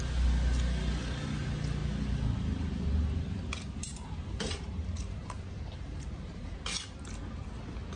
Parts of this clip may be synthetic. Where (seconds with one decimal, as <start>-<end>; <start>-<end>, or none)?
1.8-6.6